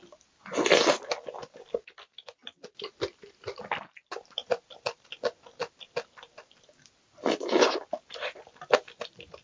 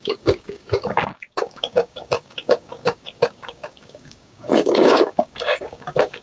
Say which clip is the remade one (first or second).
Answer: second